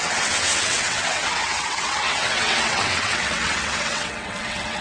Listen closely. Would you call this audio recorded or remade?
remade